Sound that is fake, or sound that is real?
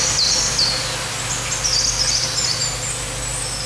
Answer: real